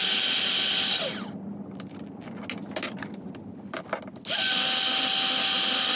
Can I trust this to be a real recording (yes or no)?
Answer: yes